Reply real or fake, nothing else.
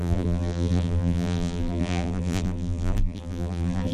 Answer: fake